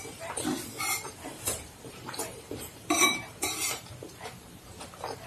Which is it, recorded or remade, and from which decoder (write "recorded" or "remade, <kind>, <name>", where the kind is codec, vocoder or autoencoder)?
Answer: remade, vocoder, BigVGAN v2